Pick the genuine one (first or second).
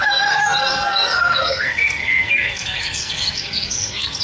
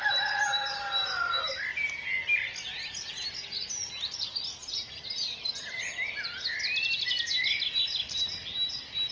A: second